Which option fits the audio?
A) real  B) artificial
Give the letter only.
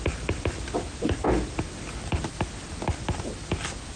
A